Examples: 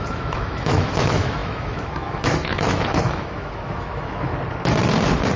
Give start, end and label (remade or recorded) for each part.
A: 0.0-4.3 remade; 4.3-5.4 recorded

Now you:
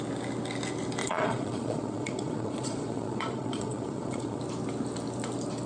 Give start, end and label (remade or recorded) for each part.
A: 0.0-1.0 recorded; 1.0-4.4 remade; 4.4-5.7 recorded

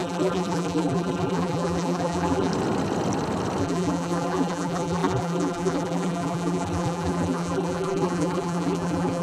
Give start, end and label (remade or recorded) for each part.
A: 0.0-2.5 remade; 2.5-3.6 recorded; 3.6-9.2 remade